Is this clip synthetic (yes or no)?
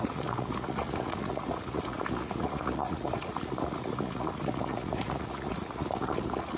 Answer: yes